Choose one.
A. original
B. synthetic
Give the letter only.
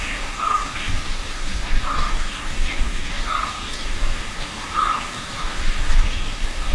B